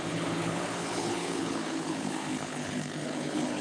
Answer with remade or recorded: remade